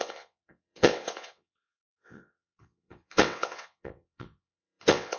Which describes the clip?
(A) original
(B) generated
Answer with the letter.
B